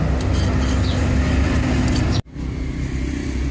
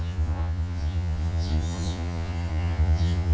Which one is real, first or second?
first